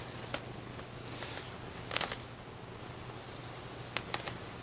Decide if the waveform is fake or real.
real